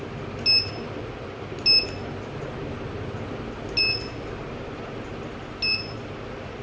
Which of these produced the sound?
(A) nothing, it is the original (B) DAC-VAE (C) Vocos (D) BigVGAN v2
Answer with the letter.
A